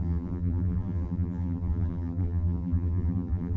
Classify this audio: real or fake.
fake